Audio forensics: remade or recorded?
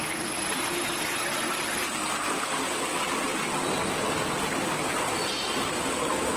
recorded